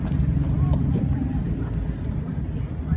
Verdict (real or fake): real